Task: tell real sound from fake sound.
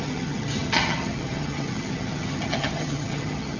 fake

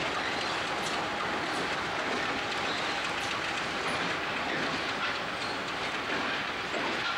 real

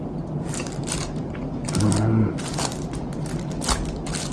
real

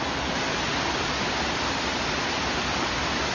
real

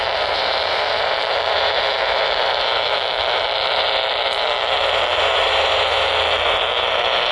fake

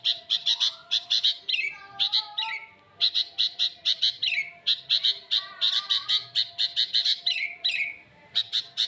real